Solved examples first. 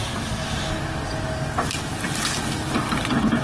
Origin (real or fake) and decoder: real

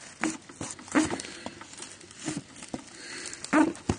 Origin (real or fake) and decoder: real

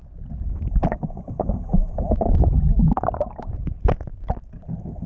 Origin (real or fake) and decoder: fake, vocoder, BigVGAN v2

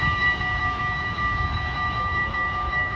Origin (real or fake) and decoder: fake, autoencoder, DAC-VAE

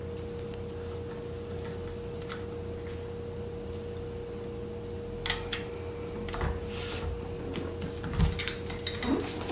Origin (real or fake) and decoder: real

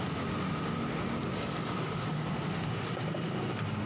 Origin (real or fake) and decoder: real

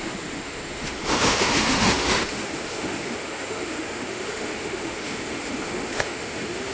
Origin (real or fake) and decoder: fake, autoencoder, DAC-VAE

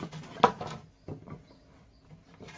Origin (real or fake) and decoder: real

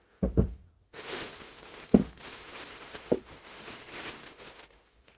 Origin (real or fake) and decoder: fake, autoencoder, DAC-VAE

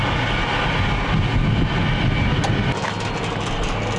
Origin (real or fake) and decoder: real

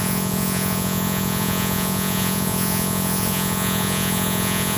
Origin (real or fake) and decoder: fake, vocoder, Vocos